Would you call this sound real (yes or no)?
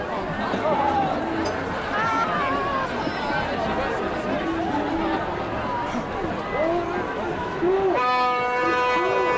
yes